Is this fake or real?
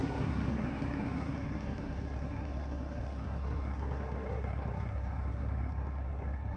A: fake